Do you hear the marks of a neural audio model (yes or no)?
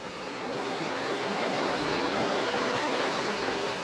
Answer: yes